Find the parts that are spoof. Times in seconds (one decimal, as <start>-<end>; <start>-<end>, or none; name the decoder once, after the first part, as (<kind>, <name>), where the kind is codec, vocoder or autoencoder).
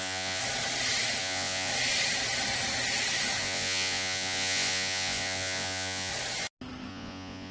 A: 0.0-0.4 (vocoder, Vocos); 1.2-1.7; 3.4-6.1; 6.9-7.5